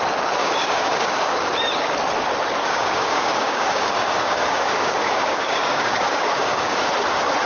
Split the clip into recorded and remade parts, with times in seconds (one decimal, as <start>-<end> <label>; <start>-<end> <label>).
0.0-0.4 recorded; 0.4-1.5 remade; 1.5-2.6 recorded; 2.6-6.8 remade; 6.8-7.5 recorded